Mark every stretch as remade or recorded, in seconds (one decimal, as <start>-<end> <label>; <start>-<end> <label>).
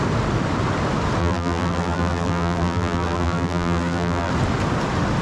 0.0-1.2 recorded; 1.2-4.3 remade; 4.3-5.2 recorded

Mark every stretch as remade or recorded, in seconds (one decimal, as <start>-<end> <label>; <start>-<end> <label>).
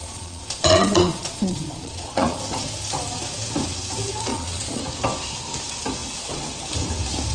0.0-2.4 remade; 2.4-4.3 recorded; 4.3-4.8 remade; 4.8-7.3 recorded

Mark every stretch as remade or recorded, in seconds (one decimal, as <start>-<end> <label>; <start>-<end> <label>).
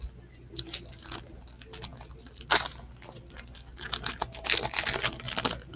0.0-5.8 recorded